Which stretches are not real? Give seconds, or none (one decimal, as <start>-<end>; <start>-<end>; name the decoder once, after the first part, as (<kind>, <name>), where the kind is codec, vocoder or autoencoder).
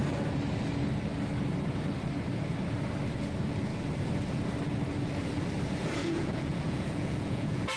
6.0-7.8 (vocoder, Vocos)